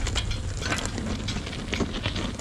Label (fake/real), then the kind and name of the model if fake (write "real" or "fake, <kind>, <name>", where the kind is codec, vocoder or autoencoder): real